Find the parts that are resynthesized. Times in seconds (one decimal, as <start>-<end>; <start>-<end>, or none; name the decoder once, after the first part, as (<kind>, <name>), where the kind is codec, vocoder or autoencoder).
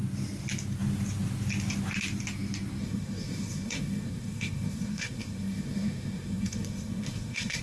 2.8-7.6 (codec, SNAC)